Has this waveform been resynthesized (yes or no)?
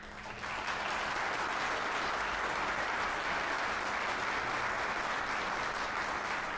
no